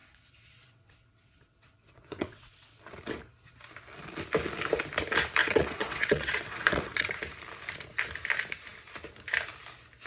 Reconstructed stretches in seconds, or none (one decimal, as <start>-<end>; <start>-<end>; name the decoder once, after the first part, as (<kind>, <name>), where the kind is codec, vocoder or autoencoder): 0.0-2.8 (vocoder, WaveNeXt); 5.4-7.1